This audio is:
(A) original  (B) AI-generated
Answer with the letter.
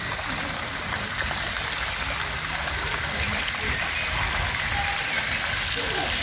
A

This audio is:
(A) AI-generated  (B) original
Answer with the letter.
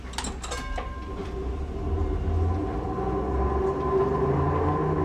B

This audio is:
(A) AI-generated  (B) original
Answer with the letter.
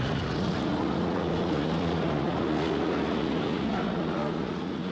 A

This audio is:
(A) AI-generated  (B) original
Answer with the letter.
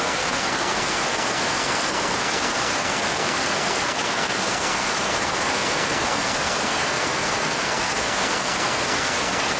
A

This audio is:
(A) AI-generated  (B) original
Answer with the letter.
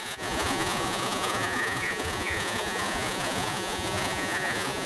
A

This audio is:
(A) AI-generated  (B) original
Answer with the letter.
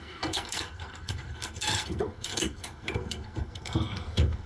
A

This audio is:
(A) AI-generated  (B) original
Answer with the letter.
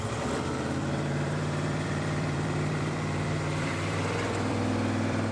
A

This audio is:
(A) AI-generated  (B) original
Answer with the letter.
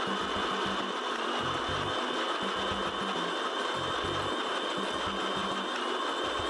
B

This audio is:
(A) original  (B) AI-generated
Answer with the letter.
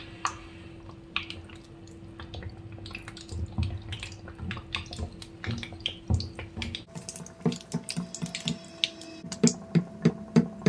A